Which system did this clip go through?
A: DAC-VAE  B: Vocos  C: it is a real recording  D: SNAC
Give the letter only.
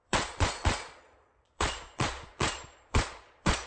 B